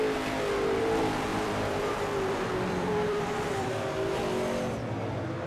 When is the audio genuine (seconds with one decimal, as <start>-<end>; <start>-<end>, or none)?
0.0-1.3; 3.7-5.5